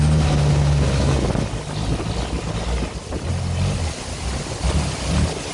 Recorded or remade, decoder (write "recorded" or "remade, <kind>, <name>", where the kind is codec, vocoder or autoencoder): recorded